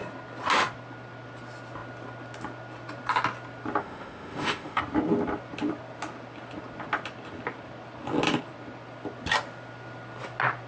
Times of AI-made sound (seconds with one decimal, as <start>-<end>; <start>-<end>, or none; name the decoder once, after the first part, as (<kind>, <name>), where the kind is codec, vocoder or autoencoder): 3.8-4.8 (autoencoder, DAC-VAE)